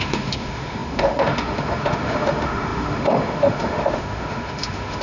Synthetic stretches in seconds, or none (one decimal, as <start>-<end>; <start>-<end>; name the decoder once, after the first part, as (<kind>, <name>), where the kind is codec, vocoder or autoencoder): 0.0-5.0 (autoencoder, DAC-VAE)